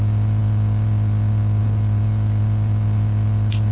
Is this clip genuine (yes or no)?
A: yes